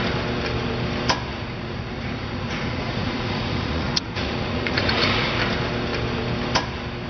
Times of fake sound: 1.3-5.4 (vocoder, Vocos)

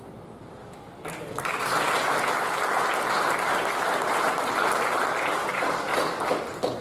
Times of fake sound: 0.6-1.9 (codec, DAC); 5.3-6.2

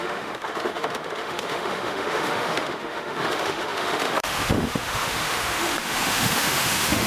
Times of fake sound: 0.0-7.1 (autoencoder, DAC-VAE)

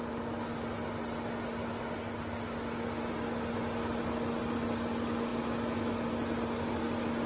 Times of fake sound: none